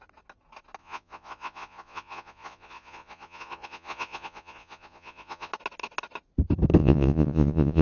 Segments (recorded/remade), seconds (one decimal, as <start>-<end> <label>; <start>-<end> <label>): 0.0-0.8 recorded; 0.8-5.5 remade; 5.5-6.8 recorded; 6.8-7.8 remade